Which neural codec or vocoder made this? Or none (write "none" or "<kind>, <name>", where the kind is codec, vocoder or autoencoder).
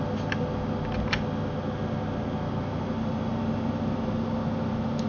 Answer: none